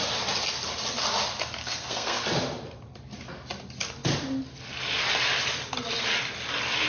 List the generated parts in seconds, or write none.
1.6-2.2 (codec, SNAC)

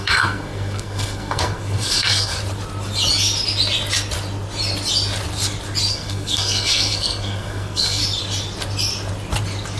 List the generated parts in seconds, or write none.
0.0-2.4 (codec, SNAC); 5.9-8.0

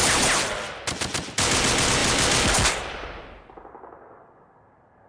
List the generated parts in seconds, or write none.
none

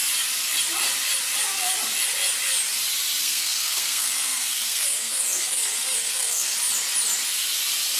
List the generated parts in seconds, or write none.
3.2-6.5 (codec, SNAC)